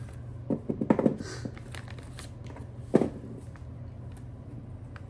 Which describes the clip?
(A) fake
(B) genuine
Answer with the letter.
B